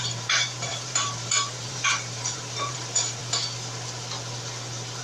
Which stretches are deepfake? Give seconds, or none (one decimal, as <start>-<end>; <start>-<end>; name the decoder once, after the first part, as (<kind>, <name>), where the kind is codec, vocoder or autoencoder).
0.0-3.2 (vocoder, BigVGAN v2)